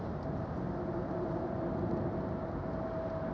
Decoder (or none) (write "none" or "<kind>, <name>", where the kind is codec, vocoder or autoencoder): none